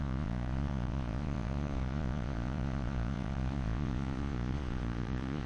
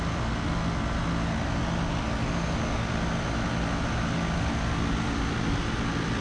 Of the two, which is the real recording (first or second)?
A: second